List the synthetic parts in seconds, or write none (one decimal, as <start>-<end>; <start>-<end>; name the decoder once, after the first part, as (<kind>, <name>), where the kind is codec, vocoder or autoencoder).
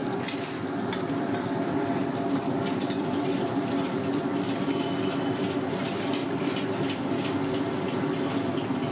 0.0-4.2 (vocoder, BigVGAN v2); 6.2-6.7